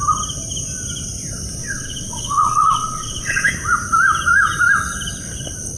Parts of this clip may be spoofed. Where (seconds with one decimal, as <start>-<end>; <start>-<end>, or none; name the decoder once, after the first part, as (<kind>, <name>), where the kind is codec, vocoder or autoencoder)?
1.6-3.5 (vocoder, WaveNeXt)

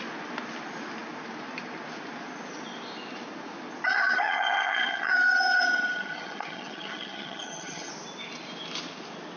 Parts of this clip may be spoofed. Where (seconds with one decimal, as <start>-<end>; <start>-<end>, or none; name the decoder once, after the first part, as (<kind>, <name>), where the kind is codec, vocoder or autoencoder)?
3.9-7.9 (vocoder, HiFi-GAN)

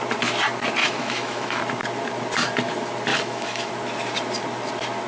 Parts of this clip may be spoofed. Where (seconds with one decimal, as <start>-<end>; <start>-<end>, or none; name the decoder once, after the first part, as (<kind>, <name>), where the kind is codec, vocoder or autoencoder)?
0.8-1.6 (autoencoder, DAC-VAE); 3.1-3.7

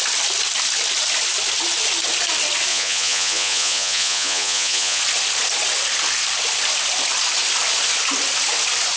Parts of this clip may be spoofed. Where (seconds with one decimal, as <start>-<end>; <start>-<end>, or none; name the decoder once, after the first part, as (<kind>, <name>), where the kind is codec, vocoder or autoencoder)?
2.7-5.0 (vocoder, Vocos)

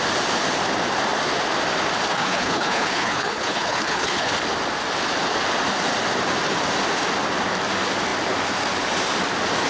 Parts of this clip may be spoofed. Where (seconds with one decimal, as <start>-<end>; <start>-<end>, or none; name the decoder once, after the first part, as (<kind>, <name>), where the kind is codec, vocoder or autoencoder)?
2.1-4.3 (codec, HILCodec)